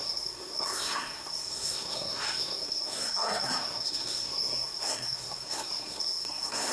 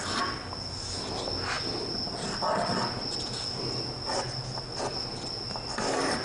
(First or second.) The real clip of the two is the second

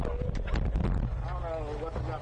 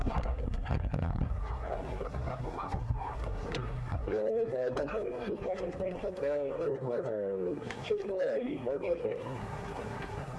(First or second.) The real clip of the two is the first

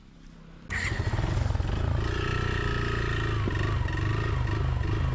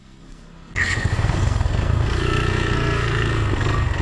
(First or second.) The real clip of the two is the first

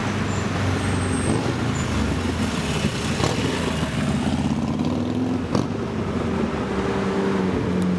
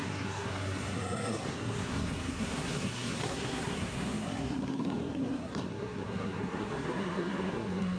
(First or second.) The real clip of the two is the first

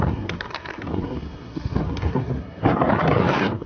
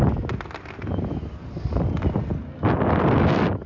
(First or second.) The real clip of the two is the second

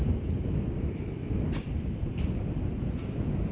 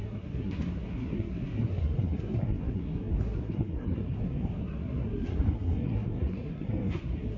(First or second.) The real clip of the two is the first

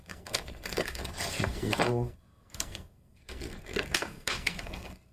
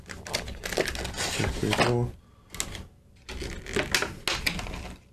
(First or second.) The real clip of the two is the second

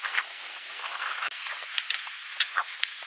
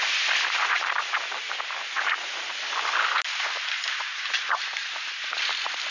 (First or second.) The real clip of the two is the second